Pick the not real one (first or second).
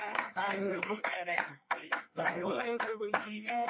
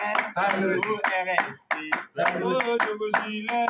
first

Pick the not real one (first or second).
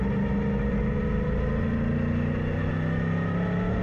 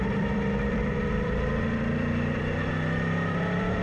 second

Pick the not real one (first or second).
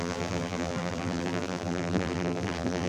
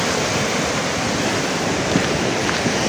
first